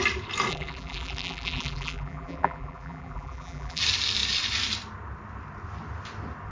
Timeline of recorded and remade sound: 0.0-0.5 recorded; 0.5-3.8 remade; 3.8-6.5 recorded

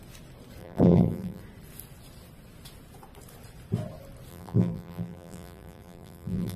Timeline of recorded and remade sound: 0.0-0.6 recorded; 0.6-1.4 remade; 1.4-4.3 recorded; 4.3-6.6 remade

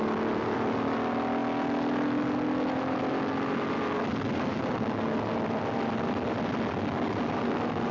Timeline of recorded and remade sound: 0.0-7.9 recorded

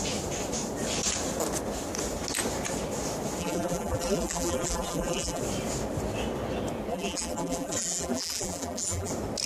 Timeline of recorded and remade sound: 0.0-3.4 recorded; 3.4-5.4 remade; 5.4-6.9 recorded; 6.9-9.1 remade; 9.1-9.5 recorded

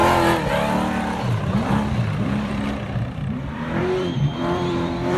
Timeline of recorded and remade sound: 0.0-1.2 recorded; 1.2-5.2 remade

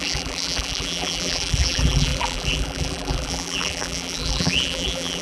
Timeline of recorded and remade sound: 0.0-5.2 remade

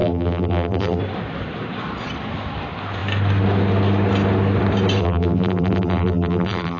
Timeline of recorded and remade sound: 0.0-1.0 remade; 1.0-5.0 recorded; 5.0-6.8 remade